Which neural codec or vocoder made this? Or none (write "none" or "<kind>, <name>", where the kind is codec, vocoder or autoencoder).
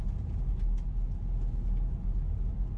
none